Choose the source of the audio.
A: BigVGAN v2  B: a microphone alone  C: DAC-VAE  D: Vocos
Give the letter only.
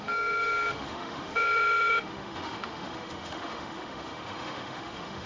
C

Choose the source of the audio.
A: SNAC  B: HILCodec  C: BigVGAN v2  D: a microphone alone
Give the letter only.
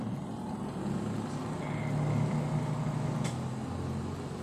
D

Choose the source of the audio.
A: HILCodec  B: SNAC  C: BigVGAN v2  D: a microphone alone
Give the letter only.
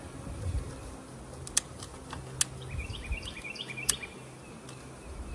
D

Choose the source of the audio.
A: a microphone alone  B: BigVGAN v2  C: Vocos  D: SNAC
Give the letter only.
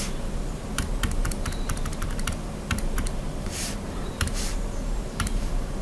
B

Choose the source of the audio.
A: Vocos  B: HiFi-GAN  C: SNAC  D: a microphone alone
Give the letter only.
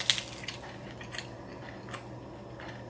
D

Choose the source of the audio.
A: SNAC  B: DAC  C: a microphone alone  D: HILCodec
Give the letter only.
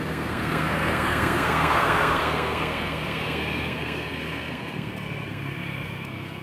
A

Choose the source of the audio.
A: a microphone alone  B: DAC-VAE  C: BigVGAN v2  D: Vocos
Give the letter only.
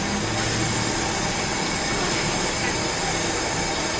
A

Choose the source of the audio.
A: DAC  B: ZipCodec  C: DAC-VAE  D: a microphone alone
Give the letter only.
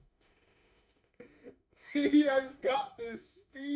C